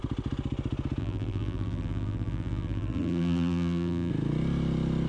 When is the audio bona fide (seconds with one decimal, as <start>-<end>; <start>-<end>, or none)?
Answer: 0.0-1.0; 4.1-5.1